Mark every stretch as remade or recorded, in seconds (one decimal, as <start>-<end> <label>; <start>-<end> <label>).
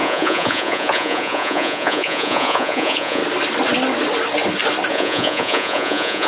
0.0-3.2 remade; 3.2-4.9 recorded; 4.9-6.3 remade